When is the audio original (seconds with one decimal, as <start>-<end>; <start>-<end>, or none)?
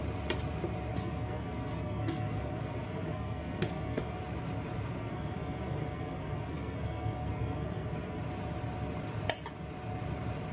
0.0-0.9; 4.2-5.0; 8.2-10.5